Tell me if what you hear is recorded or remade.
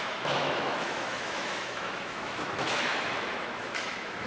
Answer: remade